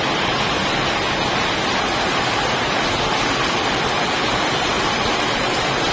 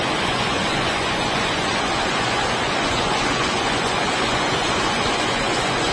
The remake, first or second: second